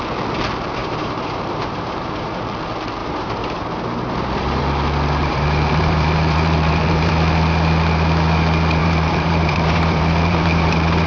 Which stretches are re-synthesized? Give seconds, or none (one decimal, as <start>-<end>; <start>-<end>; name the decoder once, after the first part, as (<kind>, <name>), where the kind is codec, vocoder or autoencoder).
0.8-2.4 (vocoder, BigVGAN v2); 3.0-4.6; 5.2-7.1; 8.8-11.1